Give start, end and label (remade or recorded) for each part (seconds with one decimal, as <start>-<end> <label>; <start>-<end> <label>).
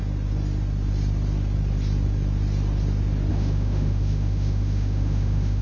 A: 0.0-3.3 recorded; 3.3-5.6 remade